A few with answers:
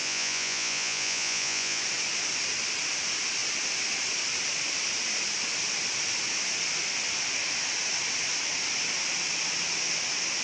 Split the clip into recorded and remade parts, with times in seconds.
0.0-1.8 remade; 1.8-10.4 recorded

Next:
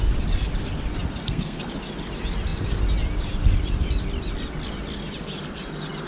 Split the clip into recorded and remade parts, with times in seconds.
0.0-1.2 recorded; 1.2-1.7 remade; 1.7-6.1 recorded

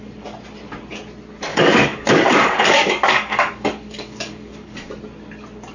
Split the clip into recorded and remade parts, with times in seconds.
0.0-1.5 recorded; 1.5-4.9 remade; 4.9-5.7 recorded

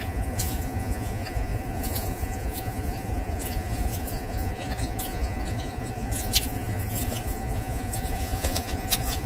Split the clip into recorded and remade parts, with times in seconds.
0.0-9.3 remade

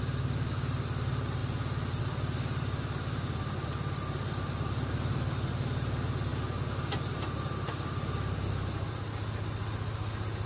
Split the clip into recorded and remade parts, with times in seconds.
0.0-10.5 recorded